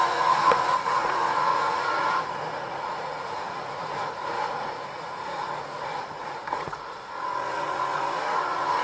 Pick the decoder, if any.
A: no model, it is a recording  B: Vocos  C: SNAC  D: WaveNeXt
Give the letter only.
B